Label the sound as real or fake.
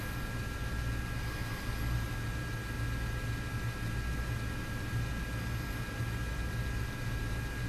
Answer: real